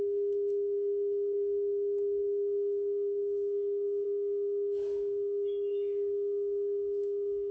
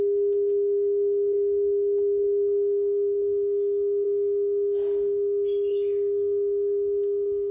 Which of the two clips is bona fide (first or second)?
second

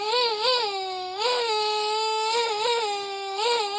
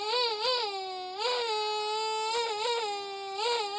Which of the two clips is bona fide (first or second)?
second